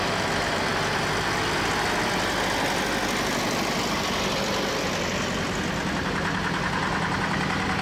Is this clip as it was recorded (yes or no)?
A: yes